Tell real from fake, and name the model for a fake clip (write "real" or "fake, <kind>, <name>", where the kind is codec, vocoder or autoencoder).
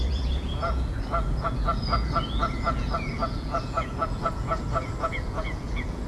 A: fake, vocoder, Vocos